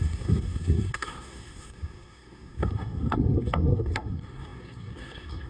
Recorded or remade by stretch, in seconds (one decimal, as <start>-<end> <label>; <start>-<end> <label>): 0.0-5.5 remade